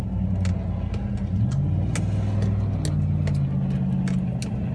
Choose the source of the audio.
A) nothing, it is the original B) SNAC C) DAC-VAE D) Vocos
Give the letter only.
A